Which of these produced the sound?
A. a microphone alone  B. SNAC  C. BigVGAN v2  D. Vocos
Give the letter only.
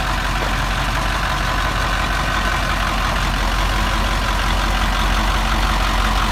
A